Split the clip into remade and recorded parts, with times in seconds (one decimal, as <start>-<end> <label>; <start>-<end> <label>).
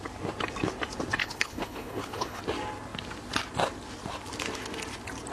0.0-1.2 recorded; 1.2-2.4 remade; 2.4-5.3 recorded